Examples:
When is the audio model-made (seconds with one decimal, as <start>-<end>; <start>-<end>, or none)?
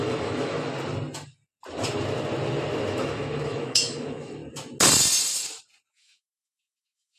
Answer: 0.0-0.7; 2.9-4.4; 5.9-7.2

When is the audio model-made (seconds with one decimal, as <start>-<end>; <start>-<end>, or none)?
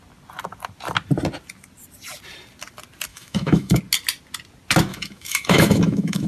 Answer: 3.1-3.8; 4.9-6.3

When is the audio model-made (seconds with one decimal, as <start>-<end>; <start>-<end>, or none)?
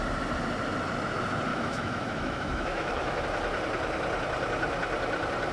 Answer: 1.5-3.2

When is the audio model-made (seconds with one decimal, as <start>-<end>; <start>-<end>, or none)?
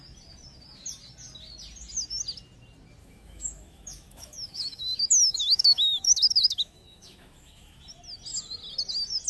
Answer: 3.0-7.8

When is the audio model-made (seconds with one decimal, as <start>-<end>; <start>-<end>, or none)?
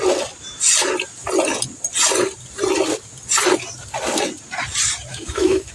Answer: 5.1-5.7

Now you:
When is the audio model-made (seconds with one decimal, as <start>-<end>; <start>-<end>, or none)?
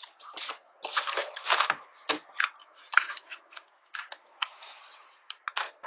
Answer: 1.2-1.9; 2.6-4.8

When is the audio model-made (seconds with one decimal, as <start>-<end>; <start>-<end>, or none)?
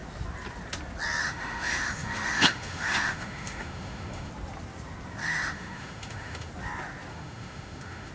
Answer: 1.2-4.3; 5.2-6.5; 7.1-8.1